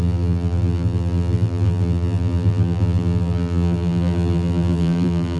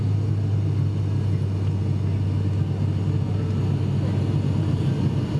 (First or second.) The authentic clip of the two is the second